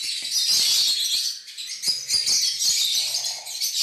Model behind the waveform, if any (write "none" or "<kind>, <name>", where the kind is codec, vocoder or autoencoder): none